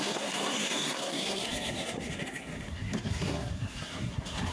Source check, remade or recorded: remade